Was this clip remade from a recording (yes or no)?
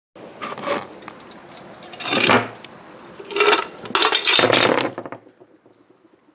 no